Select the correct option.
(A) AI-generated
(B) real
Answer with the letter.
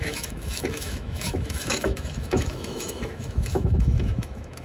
A